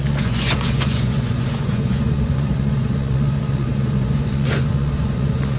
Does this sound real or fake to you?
fake